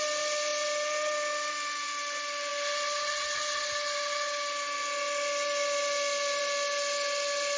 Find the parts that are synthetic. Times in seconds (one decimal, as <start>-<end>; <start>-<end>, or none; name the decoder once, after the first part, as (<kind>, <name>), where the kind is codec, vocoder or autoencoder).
none

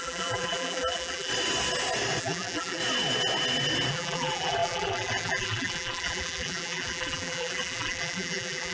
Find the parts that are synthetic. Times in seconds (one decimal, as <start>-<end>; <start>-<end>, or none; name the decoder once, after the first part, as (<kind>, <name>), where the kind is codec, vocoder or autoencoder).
0.0-1.3 (vocoder, BigVGAN v2); 2.2-2.8; 3.9-8.7

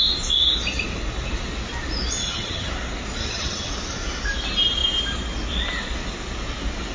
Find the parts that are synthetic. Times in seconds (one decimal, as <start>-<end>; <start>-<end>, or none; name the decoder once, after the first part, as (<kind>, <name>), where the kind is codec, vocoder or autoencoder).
2.2-2.7 (vocoder, HiFi-GAN); 3.2-3.7

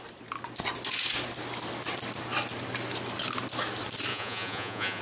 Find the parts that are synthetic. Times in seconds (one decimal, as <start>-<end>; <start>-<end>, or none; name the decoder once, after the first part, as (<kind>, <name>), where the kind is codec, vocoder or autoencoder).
4.1-5.0 (vocoder, Vocos)